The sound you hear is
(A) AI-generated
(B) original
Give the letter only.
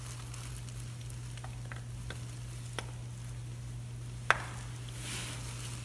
B